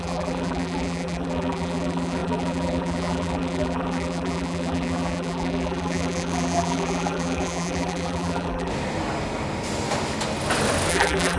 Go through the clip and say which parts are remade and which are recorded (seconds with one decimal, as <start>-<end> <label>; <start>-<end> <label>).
0.0-8.7 remade; 8.7-10.9 recorded; 10.9-11.4 remade

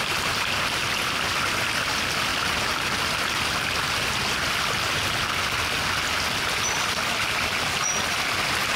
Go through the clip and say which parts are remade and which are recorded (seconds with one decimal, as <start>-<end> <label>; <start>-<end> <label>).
0.0-8.8 recorded

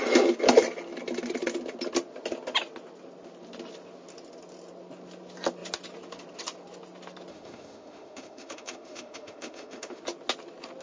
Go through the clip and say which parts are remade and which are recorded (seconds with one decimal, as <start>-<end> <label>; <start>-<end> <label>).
0.0-7.3 recorded; 7.3-10.0 remade; 10.0-10.8 recorded

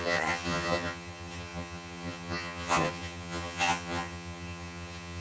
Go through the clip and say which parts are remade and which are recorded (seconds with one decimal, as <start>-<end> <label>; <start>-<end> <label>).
0.0-5.2 remade

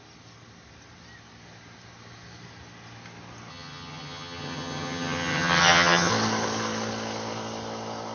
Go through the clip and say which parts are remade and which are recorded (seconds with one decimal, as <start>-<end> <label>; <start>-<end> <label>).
0.0-3.5 recorded; 3.5-6.1 remade; 6.1-8.1 recorded